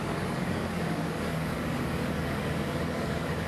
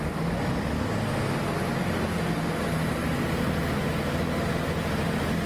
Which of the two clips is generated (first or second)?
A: first